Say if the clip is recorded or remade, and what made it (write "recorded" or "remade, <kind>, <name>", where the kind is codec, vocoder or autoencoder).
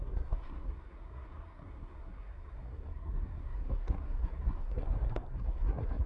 remade, codec, SNAC